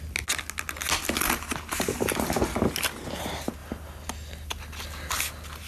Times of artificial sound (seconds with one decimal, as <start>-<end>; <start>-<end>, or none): none